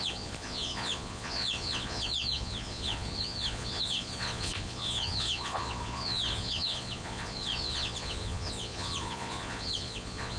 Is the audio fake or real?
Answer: fake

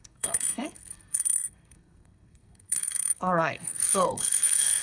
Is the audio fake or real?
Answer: fake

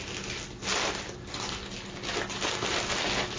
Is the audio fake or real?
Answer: real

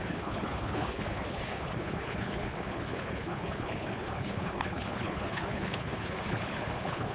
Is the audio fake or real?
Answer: fake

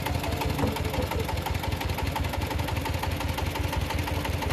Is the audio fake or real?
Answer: real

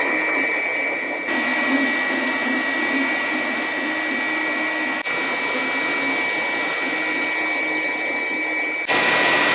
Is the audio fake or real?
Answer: real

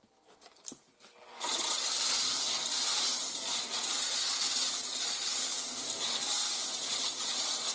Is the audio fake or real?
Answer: real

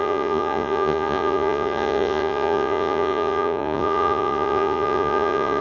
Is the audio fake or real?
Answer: fake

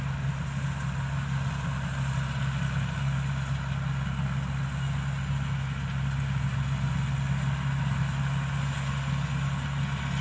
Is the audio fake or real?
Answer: real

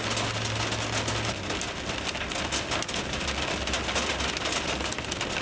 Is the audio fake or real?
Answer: real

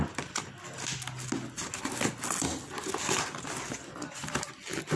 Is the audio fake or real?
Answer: real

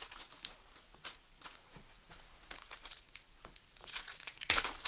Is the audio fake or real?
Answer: fake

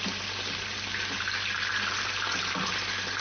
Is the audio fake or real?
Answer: real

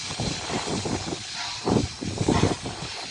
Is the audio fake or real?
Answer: real